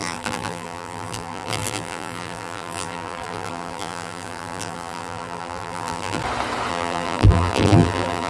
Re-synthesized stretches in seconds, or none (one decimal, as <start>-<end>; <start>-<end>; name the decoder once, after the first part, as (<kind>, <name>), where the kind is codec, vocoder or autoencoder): 0.0-6.2 (vocoder, BigVGAN v2); 6.7-8.3